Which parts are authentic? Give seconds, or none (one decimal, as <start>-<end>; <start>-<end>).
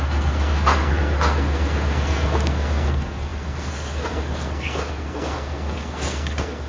none